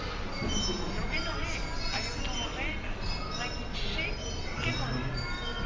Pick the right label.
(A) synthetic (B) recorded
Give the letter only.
B